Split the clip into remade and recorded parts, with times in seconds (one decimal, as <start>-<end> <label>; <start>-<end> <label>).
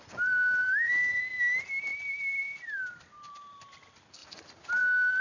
0.0-0.6 recorded; 0.6-1.3 remade; 1.3-1.9 recorded; 1.9-3.7 remade; 3.7-4.2 recorded; 4.2-4.8 remade; 4.8-5.2 recorded